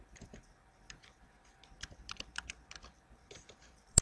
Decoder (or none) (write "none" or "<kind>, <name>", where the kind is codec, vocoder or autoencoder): vocoder, BigVGAN v2